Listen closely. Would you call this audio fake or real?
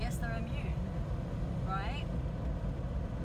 real